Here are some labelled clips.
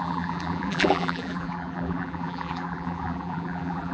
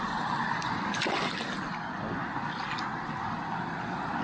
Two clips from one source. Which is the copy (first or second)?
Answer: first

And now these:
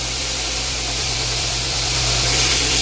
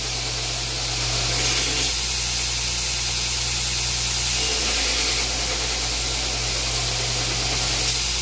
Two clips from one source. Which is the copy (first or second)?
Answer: first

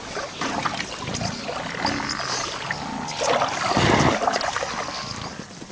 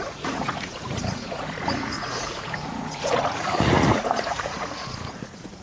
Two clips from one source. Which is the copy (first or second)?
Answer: second